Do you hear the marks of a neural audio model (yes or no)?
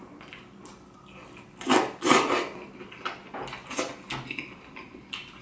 no